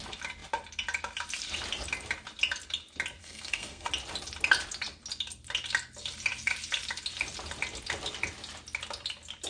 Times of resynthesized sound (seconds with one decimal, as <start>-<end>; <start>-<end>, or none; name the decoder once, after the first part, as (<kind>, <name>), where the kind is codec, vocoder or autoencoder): 3.2-3.9 (codec, SNAC)